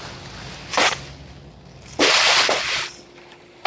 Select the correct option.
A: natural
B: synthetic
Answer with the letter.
A